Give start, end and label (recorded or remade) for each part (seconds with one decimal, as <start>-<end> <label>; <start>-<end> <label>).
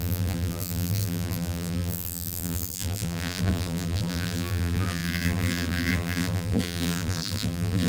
0.0-7.9 remade